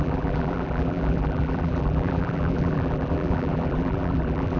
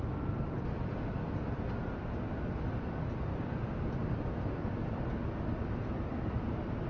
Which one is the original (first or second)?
second